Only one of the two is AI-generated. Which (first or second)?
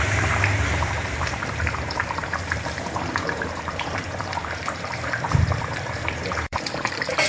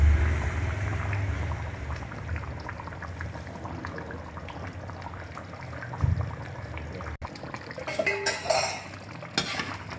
first